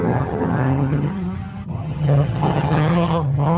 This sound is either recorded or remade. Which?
remade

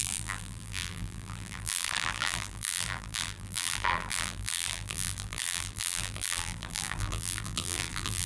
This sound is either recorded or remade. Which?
remade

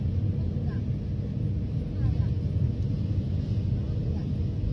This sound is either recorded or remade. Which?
recorded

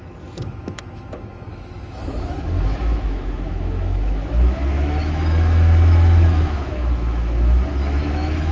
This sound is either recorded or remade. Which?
remade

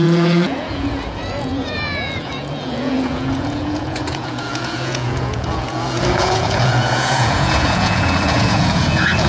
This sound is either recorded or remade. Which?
remade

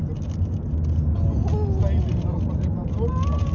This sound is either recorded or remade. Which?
recorded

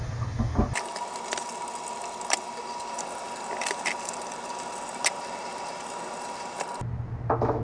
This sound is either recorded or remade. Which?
recorded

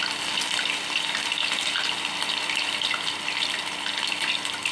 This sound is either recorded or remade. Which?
recorded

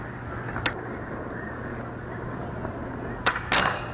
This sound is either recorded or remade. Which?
recorded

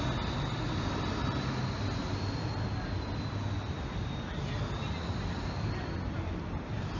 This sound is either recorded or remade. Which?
recorded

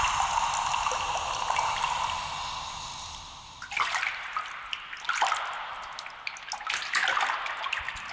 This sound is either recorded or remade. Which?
recorded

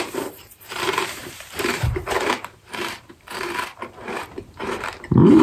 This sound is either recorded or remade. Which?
remade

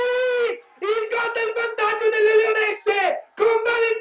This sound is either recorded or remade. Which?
recorded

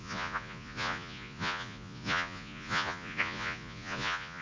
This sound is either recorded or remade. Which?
remade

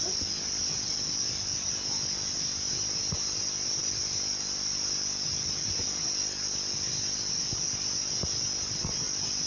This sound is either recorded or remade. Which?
recorded